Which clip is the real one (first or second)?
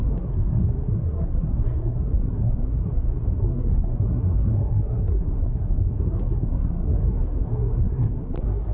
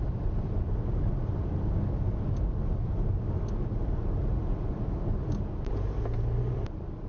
second